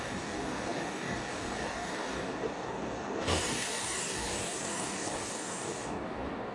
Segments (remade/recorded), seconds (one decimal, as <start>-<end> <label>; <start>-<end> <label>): 0.0-6.5 remade